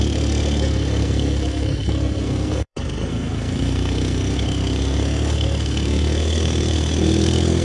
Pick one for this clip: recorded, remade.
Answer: remade